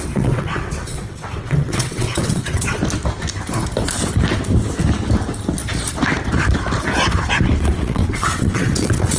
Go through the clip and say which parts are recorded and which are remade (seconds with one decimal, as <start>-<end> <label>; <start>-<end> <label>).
0.0-2.8 remade; 2.8-7.6 recorded; 7.6-9.2 remade